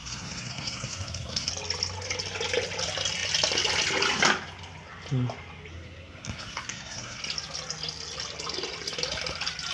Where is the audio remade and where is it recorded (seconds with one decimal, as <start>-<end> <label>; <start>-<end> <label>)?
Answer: 0.0-1.5 remade; 1.5-5.7 recorded; 5.7-7.2 remade; 7.2-9.7 recorded